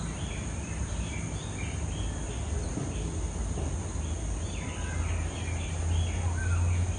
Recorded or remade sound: recorded